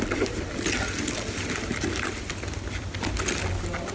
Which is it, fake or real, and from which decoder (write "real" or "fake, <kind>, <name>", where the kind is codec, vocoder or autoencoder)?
real